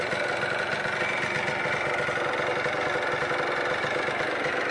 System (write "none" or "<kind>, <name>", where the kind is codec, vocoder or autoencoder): none